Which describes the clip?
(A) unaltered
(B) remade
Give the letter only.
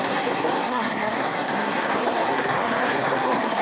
B